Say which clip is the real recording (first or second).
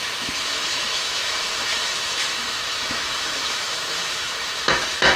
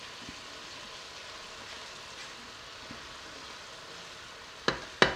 second